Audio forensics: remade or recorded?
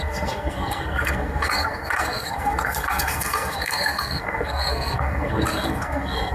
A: remade